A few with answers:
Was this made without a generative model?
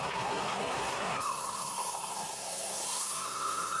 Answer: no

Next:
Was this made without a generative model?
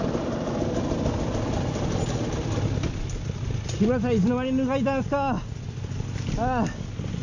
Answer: yes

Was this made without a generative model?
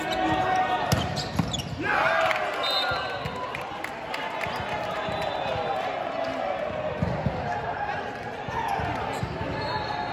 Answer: yes